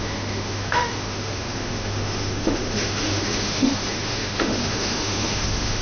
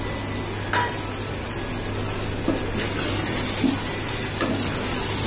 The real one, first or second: second